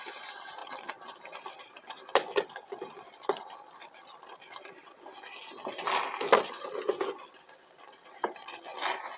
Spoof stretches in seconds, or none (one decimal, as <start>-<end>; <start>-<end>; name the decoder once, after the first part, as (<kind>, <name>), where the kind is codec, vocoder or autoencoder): none